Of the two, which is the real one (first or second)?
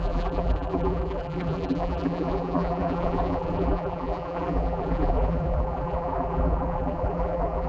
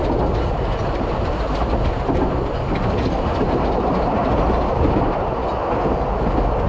second